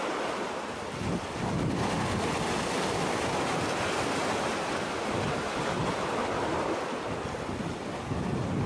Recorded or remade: recorded